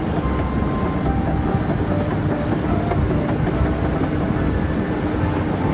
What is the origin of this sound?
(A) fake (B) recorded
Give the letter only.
B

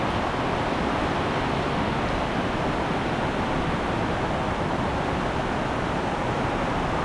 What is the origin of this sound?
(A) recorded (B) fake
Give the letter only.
A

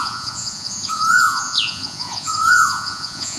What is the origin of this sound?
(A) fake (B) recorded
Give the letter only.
A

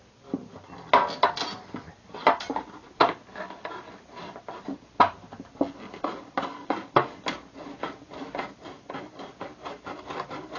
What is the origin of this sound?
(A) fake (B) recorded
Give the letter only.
B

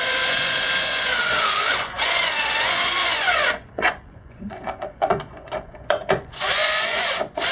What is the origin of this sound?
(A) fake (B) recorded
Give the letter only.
A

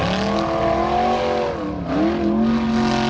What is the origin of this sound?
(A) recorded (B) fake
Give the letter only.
A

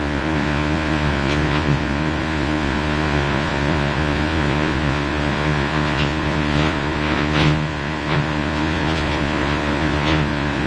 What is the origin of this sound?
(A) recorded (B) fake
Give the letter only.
B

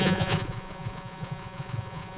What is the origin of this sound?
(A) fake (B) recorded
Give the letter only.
A